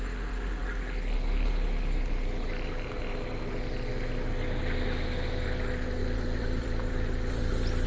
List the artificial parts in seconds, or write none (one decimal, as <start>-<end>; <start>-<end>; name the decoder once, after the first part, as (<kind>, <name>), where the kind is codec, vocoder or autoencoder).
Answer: 6.0-7.9 (vocoder, BigVGAN v2)